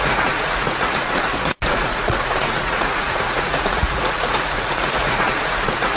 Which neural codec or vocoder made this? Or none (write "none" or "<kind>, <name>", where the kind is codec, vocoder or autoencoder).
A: vocoder, Vocos